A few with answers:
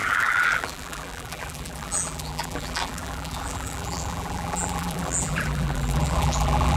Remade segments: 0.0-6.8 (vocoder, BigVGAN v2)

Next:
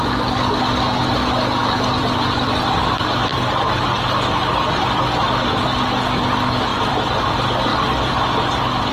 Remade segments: 1.6-2.6 (vocoder, BigVGAN v2); 3.3-3.8; 6.7-7.2; 7.7-8.9

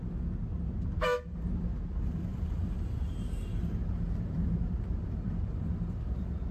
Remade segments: 2.3-3.1 (vocoder, BigVGAN v2); 3.5-5.9

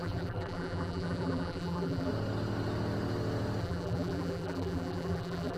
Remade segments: 0.0-2.1 (vocoder, BigVGAN v2); 3.6-5.6

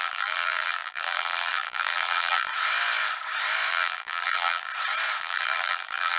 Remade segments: 0.0-2.5 (vocoder, BigVGAN v2); 3.7-4.7; 5.2-6.2

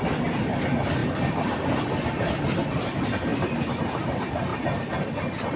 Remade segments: 1.0-2.3 (vocoder, BigVGAN v2); 4.5-5.1